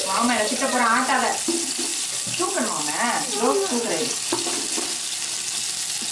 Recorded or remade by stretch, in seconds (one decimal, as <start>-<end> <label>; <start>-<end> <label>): 0.0-6.1 recorded